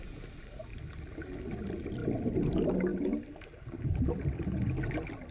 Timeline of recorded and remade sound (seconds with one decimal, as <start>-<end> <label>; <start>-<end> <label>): 0.0-0.7 recorded; 0.7-1.4 remade; 1.4-2.0 recorded; 2.0-2.5 remade; 2.5-2.9 recorded; 2.9-4.4 remade; 4.4-5.3 recorded